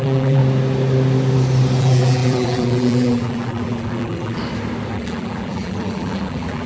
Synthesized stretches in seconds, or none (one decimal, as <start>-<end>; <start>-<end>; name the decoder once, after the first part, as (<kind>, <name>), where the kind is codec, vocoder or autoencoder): 0.0-0.4 (vocoder, BigVGAN v2); 1.8-4.4; 4.9-6.7